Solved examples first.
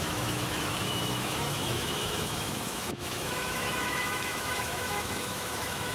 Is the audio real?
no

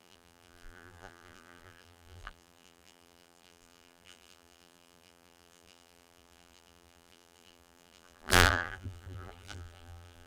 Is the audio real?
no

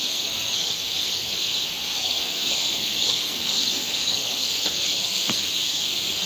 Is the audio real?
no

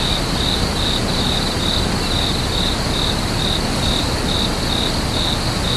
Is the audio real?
yes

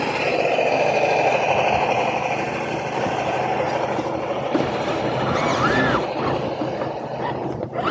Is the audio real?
yes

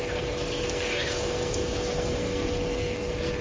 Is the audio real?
no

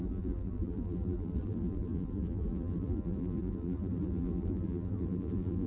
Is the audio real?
no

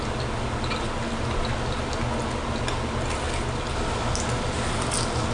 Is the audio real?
yes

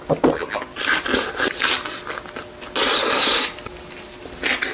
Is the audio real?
yes